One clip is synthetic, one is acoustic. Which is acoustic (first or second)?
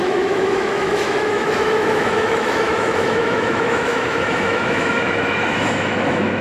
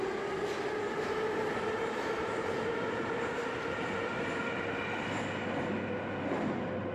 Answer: second